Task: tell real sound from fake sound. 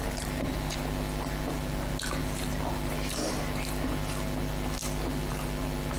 real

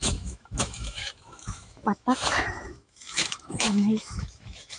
fake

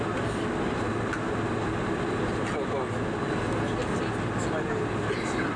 real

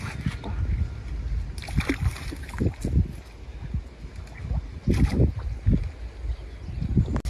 real